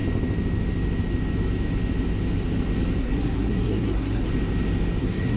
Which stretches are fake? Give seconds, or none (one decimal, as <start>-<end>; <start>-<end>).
3.0-4.3; 5.0-5.4